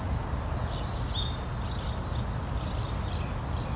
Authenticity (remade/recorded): recorded